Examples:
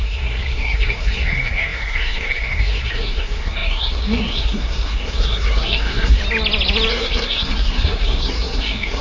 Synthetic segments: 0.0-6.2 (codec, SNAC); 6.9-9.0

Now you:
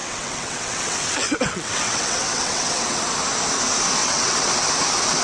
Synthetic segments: 0.0-3.1 (vocoder, WaveNeXt); 4.0-4.5

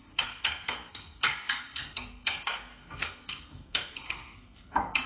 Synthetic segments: 0.0-5.1 (codec, SNAC)

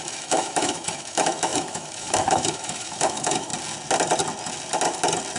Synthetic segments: 0.0-3.5 (autoencoder, DAC-VAE)